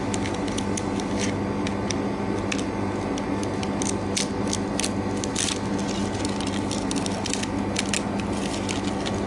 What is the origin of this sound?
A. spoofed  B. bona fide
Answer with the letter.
B